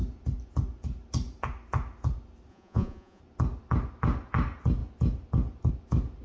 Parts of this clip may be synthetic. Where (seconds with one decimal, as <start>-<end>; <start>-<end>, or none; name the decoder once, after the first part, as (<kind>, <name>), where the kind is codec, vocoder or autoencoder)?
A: 2.5-3.2 (vocoder, Vocos)